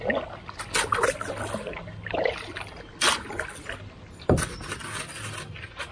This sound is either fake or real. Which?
real